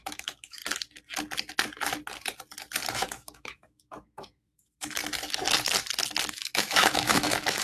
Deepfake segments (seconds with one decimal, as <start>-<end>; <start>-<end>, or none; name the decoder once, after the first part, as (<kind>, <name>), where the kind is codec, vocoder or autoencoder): 0.0-0.6 (autoencoder, DAC-VAE); 2.9-5.0; 6.3-7.6